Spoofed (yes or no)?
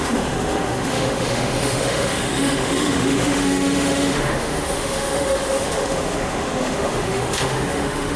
yes